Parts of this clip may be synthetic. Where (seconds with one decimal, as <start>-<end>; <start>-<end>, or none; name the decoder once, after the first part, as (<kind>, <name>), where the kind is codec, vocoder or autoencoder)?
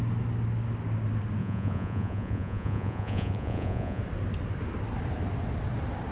1.4-4.0 (vocoder, Vocos)